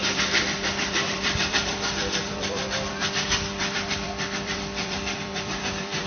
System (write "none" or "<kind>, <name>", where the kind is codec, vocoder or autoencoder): vocoder, BigVGAN v2